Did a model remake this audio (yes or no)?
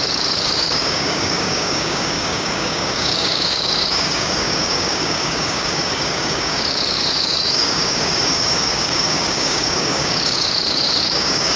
yes